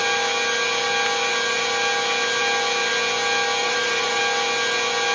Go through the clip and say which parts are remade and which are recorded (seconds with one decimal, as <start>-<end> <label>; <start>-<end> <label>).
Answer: 0.0-3.6 recorded; 3.6-4.2 remade; 4.2-5.1 recorded